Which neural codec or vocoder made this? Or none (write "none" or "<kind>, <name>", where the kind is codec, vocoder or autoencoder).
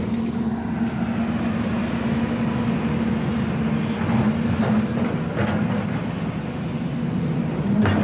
none